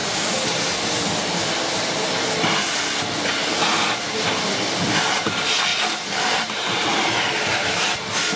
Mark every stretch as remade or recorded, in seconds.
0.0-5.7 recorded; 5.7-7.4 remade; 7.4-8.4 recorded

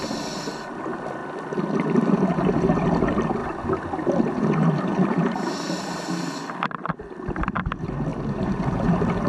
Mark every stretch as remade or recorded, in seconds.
0.0-3.4 recorded; 3.4-4.4 remade; 4.4-9.3 recorded